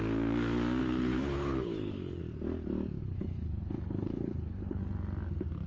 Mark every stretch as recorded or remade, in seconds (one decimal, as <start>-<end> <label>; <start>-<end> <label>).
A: 0.0-0.8 recorded; 0.8-2.2 remade; 2.2-3.0 recorded; 3.0-4.8 remade; 4.8-5.7 recorded